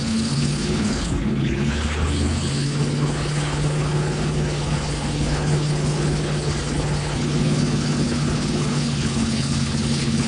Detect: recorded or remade remade